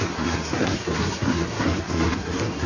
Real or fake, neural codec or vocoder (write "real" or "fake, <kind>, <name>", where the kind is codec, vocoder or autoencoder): fake, codec, SNAC